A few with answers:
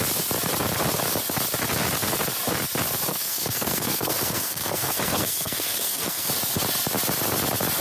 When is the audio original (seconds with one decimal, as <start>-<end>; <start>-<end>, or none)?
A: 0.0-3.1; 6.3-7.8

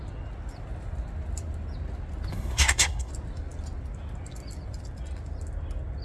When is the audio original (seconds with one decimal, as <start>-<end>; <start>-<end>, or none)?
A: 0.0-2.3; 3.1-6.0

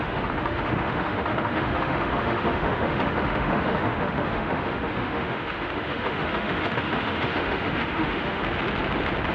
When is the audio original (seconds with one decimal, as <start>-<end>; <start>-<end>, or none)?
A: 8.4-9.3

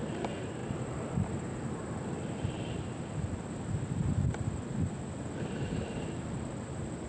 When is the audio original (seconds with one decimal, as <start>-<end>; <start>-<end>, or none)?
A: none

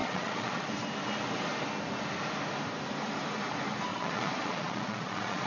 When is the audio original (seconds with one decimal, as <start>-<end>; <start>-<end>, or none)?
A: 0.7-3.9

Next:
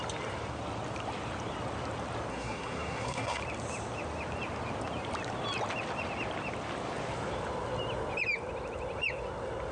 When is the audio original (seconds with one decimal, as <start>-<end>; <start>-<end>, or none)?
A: 0.0-2.3; 3.4-9.7

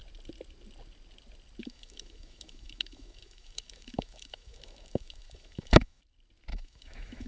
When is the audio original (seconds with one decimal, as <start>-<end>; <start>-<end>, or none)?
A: 0.0-1.6; 6.0-6.5

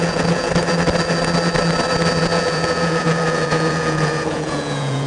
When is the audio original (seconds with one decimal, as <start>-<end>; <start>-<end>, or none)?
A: 0.5-2.2